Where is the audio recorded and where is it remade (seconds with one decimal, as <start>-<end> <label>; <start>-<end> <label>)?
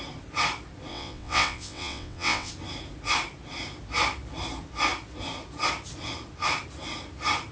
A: 0.0-0.9 recorded; 0.9-2.5 remade; 2.5-7.5 recorded